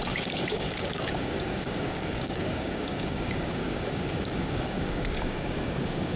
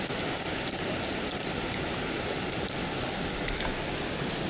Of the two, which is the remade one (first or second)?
first